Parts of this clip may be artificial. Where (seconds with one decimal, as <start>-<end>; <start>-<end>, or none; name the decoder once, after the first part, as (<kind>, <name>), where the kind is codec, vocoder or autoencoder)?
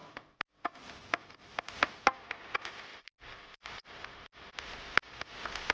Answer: 2.9-4.5 (vocoder, BigVGAN v2)